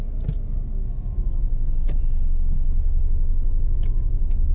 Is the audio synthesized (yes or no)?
no